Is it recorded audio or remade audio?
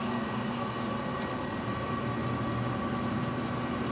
recorded